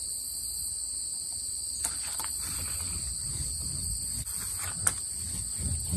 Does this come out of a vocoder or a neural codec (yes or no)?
no